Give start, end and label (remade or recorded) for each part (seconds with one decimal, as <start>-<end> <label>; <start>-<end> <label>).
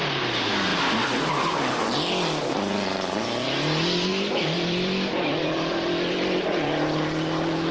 0.0-4.1 recorded; 4.1-6.1 remade; 6.1-7.7 recorded